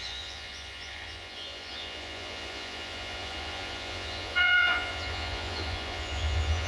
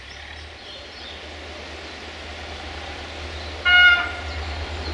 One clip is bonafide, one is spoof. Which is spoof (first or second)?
first